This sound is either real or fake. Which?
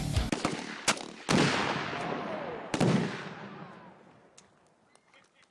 real